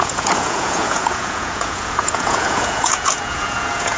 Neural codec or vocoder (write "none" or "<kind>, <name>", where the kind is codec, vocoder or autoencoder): vocoder, Vocos